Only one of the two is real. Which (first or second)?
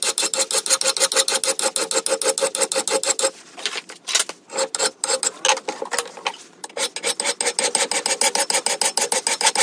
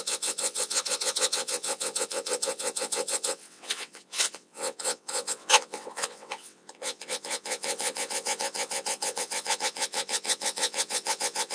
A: first